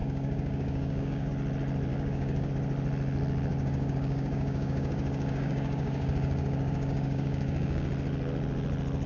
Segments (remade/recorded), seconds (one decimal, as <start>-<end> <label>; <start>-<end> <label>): 0.0-1.3 remade; 1.3-1.9 recorded; 1.9-2.5 remade; 2.5-3.5 recorded; 3.5-7.9 remade; 7.9-9.1 recorded